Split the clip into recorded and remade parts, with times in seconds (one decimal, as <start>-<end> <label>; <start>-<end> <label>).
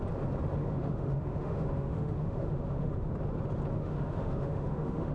0.0-0.6 recorded; 0.6-3.1 remade; 3.1-3.7 recorded; 3.7-5.1 remade